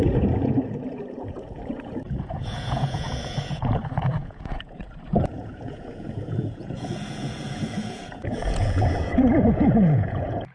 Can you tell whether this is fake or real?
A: fake